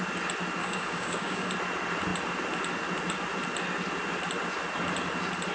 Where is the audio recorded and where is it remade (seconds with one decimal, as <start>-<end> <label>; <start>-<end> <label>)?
0.0-0.6 recorded; 0.6-1.5 remade; 1.5-5.5 recorded